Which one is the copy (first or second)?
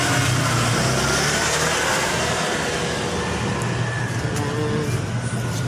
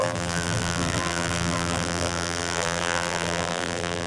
second